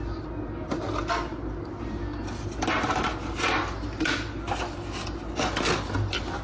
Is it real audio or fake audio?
real